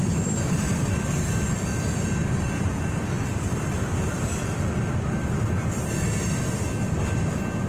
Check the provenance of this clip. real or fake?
real